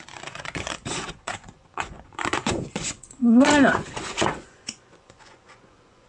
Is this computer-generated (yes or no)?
yes